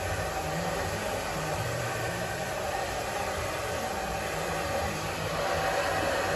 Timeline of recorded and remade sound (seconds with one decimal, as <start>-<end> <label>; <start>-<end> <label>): 0.0-1.3 recorded; 1.3-4.5 remade; 4.5-6.4 recorded